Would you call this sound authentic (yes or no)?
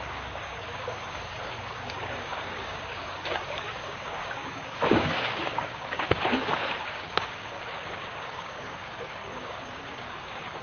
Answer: no